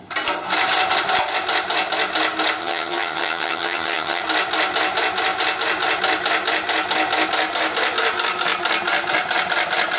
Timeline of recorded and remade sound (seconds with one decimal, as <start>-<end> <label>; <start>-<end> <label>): 0.0-2.6 recorded; 2.6-4.2 remade; 4.2-10.0 recorded